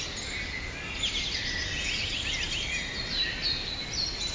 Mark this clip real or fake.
real